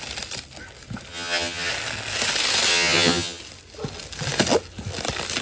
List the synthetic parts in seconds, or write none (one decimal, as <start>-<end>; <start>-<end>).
1.1-1.7; 2.7-3.4